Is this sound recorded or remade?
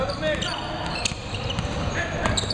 recorded